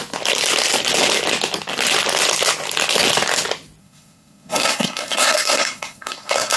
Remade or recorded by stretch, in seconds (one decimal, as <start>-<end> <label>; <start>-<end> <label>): 0.0-3.8 recorded; 3.8-6.6 remade